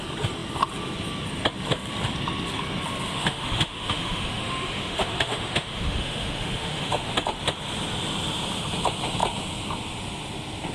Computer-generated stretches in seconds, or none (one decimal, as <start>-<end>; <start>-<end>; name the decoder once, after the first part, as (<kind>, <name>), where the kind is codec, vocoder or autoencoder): 3.1-7.1 (autoencoder, DAC-VAE)